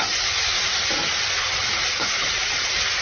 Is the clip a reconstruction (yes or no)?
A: no